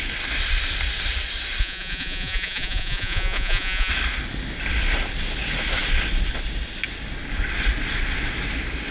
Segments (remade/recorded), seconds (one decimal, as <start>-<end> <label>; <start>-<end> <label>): 0.0-1.6 recorded; 1.6-3.9 remade; 3.9-8.9 recorded